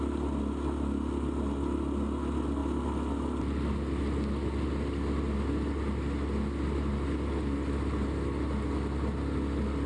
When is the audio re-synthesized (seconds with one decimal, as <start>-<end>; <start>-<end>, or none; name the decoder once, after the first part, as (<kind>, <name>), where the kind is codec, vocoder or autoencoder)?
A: none

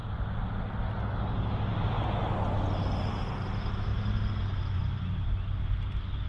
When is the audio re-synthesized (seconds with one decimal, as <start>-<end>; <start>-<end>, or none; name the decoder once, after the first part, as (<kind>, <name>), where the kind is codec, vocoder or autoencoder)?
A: none

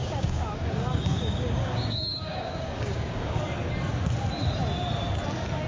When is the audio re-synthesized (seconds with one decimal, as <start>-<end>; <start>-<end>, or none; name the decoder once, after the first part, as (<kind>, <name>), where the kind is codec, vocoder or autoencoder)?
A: 0.0-3.4 (codec, DAC)

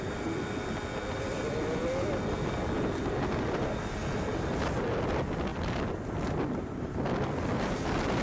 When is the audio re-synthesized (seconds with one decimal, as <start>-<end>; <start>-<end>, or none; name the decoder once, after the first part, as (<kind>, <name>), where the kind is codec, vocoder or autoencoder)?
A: none

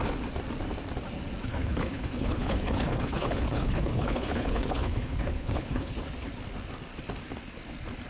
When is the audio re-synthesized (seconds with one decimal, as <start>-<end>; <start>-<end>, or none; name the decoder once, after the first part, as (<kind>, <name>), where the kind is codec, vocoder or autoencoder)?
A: 1.4-6.0 (codec, HILCodec)

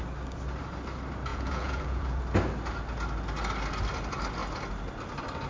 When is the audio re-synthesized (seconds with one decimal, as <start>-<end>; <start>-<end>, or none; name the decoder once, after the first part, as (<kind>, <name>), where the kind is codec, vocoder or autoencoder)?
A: 1.3-2.2 (vocoder, Vocos)

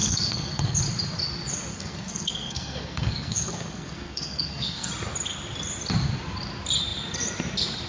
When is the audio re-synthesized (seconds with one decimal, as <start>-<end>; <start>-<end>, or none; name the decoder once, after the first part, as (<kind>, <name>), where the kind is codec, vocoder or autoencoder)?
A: 0.0-0.8 (codec, SNAC); 1.7-4.9